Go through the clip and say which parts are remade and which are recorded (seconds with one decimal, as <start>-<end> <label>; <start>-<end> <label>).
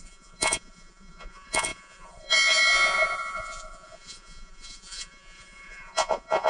0.0-6.5 remade